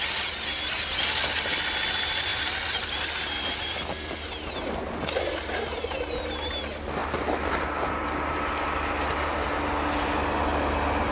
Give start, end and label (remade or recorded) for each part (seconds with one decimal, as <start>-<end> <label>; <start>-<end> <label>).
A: 0.0-11.1 recorded